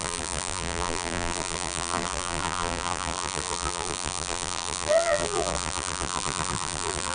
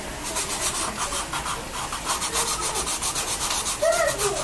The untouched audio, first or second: second